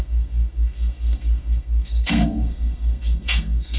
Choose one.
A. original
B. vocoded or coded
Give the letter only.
B